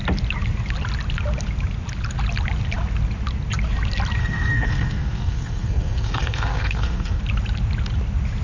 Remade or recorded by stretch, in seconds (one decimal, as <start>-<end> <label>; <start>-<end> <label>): 0.0-4.2 recorded; 4.2-7.2 remade; 7.2-8.4 recorded